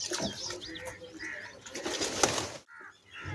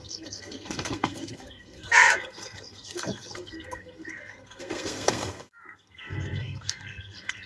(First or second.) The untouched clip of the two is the first